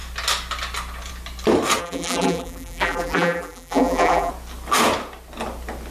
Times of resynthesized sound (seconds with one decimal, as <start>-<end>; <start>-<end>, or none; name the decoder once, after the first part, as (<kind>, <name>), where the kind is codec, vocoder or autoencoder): 1.8-4.3 (vocoder, BigVGAN v2)